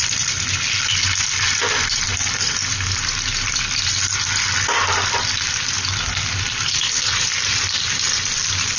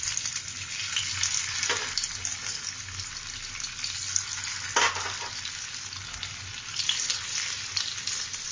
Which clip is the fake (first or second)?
first